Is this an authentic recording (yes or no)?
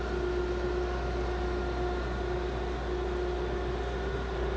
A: yes